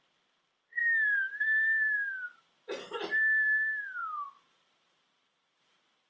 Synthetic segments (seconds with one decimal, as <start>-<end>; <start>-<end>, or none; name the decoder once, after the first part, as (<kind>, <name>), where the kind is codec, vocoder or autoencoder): none